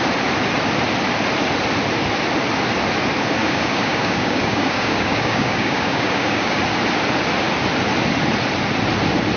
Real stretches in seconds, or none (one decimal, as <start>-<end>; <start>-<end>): 0.0-3.4; 6.6-9.4